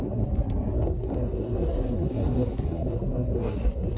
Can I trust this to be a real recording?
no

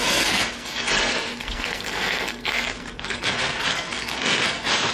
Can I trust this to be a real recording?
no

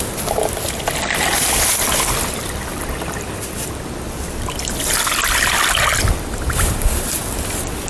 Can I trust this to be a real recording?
yes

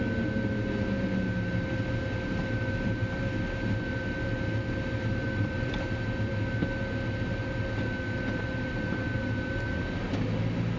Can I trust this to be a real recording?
yes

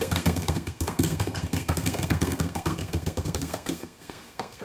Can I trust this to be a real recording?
no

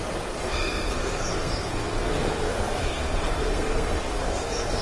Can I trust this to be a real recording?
no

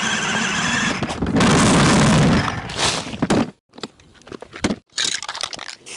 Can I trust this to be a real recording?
yes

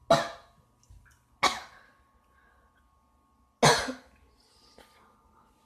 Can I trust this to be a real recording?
yes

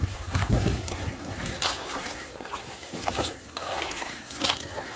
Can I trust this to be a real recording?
no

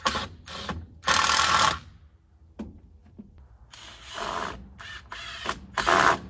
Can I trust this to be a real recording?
yes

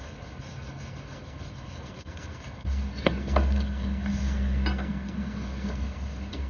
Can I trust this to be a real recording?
no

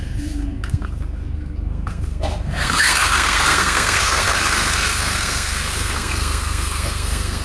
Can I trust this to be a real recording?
no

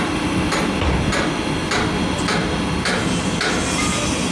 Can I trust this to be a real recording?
yes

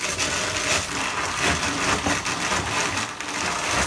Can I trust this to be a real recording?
yes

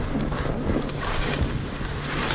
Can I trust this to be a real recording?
yes